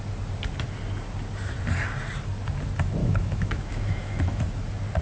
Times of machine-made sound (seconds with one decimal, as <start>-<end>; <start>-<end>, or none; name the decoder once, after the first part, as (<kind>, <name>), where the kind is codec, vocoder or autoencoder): 3.0-4.4 (autoencoder, DAC-VAE)